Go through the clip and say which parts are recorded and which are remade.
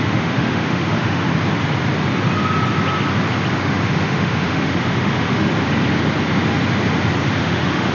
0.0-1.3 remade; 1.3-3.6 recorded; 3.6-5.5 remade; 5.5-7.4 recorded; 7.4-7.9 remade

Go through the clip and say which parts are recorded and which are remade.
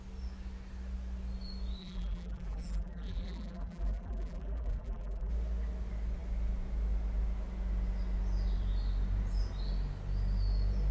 0.0-1.8 recorded; 1.8-5.3 remade; 5.3-10.9 recorded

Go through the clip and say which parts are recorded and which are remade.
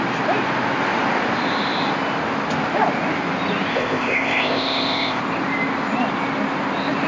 0.0-3.7 recorded; 3.7-5.2 remade; 5.2-7.1 recorded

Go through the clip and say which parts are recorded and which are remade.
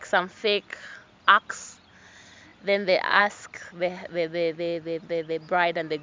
0.0-6.0 recorded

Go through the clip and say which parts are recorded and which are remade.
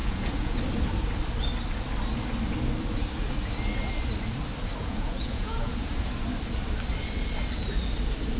0.0-0.6 remade; 0.6-4.8 recorded; 4.8-5.9 remade; 5.9-8.4 recorded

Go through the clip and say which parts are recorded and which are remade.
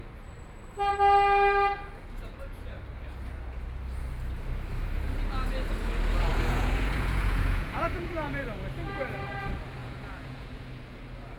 0.0-6.3 recorded; 6.3-8.3 remade; 8.3-9.8 recorded; 9.8-10.6 remade; 10.6-11.4 recorded